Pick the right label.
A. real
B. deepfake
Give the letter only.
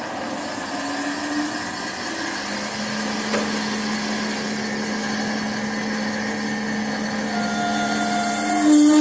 A